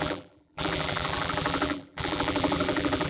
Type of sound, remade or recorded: remade